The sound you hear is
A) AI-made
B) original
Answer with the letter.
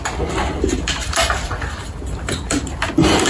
A